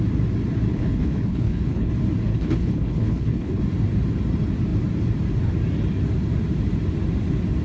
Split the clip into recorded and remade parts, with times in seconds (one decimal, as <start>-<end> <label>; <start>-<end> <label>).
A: 0.0-0.7 recorded; 0.7-1.9 remade; 1.9-2.3 recorded; 2.3-3.6 remade; 3.6-7.6 recorded